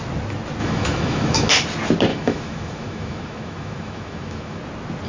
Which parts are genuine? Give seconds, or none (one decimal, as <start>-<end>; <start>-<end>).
0.0-0.6; 1.5-2.1; 4.6-5.1

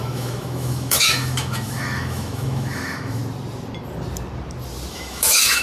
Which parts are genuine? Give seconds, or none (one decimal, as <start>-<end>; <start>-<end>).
3.2-4.9

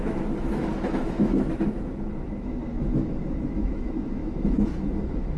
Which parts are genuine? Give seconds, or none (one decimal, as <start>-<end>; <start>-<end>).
none